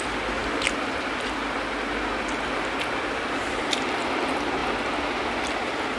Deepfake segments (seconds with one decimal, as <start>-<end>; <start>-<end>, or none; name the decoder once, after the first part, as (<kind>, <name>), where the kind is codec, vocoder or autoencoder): none